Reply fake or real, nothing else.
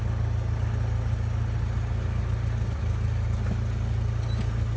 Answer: real